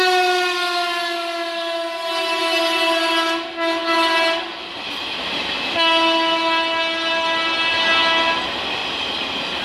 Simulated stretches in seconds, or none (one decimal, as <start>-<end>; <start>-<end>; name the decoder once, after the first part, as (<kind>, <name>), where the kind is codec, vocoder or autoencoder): none